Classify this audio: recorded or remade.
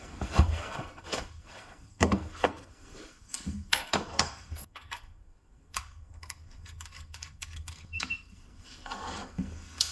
remade